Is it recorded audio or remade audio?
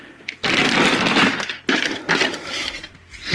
recorded